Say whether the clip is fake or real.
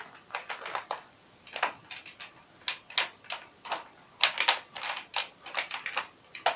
real